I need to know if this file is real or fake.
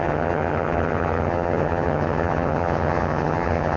fake